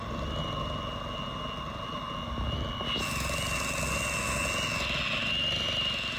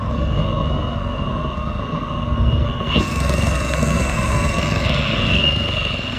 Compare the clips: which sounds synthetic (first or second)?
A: second